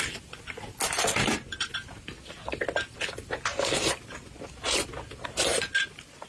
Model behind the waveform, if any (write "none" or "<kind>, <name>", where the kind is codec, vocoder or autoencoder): none